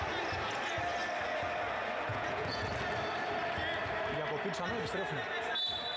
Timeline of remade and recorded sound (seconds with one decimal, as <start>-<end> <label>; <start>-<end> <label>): 0.0-2.1 recorded; 2.1-2.7 remade; 2.7-6.0 recorded